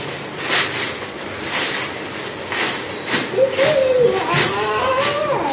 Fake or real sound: real